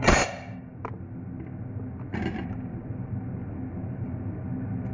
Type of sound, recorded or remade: recorded